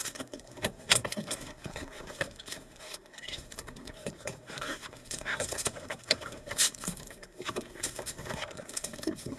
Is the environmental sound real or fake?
fake